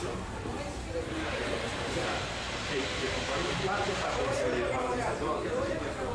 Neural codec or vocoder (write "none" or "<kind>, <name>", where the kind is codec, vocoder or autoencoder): vocoder, BigVGAN v2